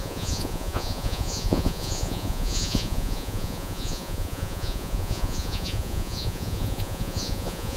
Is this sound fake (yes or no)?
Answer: yes